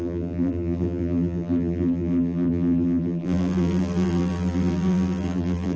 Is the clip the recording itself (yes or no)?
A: no